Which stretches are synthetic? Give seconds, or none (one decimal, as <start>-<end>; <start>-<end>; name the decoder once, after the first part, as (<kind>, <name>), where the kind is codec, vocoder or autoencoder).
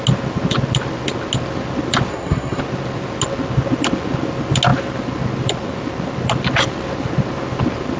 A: 2.1-2.6 (codec, SNAC)